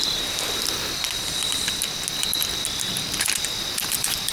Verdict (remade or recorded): recorded